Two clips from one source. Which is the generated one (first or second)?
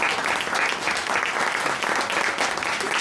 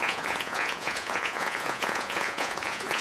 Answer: second